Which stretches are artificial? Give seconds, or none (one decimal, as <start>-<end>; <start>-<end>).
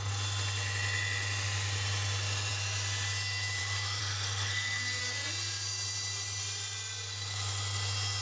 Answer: 4.0-5.0